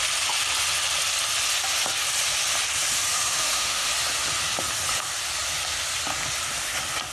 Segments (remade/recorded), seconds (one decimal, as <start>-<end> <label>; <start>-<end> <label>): 0.0-3.3 recorded; 3.3-3.9 remade; 3.9-7.1 recorded